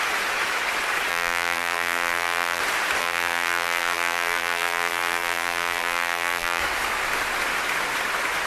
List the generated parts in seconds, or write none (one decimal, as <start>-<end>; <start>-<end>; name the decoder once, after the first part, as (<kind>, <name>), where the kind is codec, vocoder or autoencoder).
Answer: 1.1-2.6 (vocoder, BigVGAN v2); 3.0-6.6

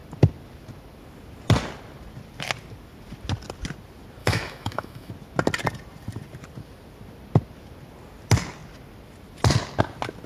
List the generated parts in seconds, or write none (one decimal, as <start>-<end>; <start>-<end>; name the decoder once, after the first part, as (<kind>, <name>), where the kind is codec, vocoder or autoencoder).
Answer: 4.2-5.1 (autoencoder, DAC-VAE)

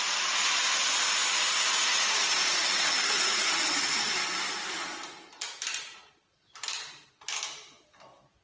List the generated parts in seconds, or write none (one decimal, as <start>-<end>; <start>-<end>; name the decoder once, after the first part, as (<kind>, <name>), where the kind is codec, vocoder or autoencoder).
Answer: 1.9-4.0 (vocoder, Vocos)

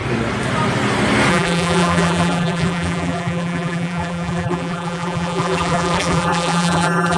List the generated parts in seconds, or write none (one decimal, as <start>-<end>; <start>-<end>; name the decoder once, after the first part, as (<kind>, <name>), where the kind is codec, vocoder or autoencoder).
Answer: 1.3-7.2 (vocoder, BigVGAN v2)

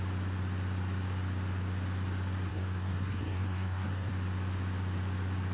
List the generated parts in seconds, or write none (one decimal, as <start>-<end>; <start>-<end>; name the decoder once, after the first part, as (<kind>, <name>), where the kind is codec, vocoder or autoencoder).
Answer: 2.5-4.1 (codec, SNAC)

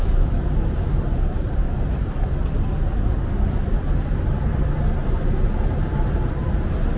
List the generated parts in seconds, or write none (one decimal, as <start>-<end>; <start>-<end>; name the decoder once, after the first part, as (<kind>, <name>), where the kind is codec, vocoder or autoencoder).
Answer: 0.0-7.0 (vocoder, BigVGAN v2)

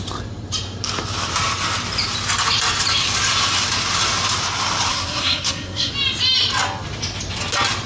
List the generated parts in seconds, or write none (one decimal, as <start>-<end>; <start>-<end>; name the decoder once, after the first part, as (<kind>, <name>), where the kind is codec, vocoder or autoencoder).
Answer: 4.9-5.9 (codec, SNAC)